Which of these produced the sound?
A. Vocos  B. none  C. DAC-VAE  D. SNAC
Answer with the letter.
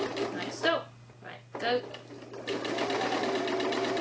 B